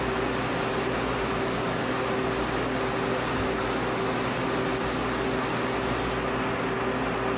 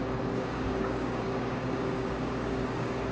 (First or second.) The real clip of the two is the first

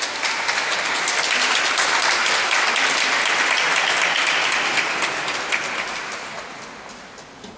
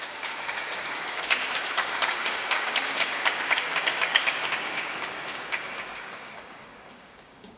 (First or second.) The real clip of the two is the first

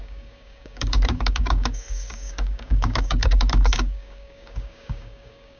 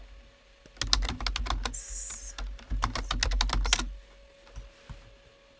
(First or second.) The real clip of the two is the second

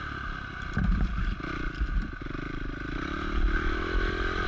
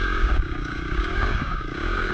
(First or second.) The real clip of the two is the first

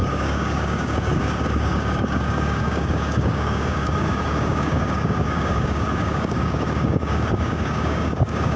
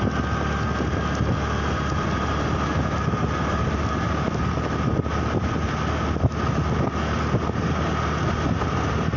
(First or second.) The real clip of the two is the second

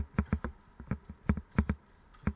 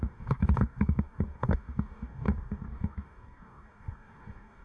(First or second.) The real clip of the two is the first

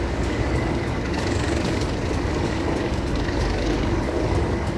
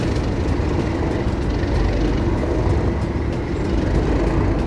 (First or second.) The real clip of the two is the second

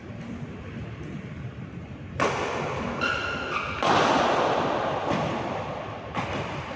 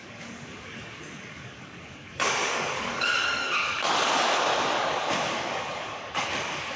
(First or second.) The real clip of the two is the first